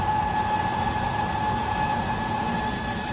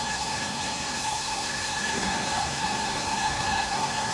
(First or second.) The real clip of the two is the first